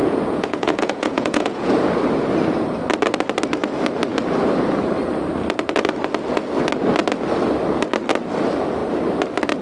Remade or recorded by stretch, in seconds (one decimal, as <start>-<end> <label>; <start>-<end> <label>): 0.0-1.7 remade; 1.7-9.6 recorded